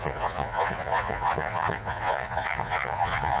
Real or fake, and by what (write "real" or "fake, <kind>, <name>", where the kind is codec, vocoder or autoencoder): fake, vocoder, Vocos